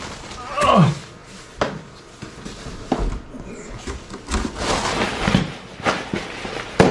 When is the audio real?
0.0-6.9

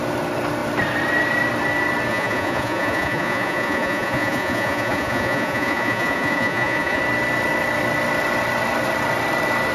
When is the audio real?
0.0-2.1; 7.0-9.7